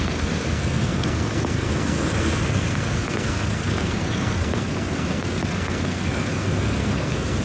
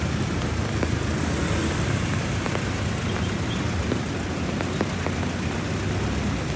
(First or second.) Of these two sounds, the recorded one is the second